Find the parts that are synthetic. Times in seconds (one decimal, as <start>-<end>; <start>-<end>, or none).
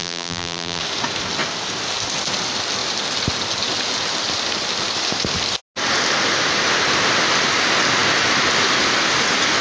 0.0-0.8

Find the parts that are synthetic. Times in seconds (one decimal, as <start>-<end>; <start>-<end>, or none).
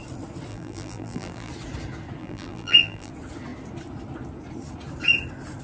0.5-1.5; 2.2-3.1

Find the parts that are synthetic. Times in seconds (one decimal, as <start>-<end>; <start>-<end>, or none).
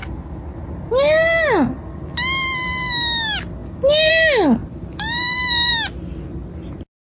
0.0-0.7; 4.6-5.7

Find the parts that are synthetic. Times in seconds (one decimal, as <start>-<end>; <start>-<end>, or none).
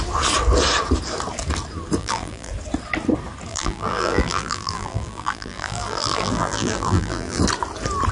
2.0-2.5; 3.5-7.4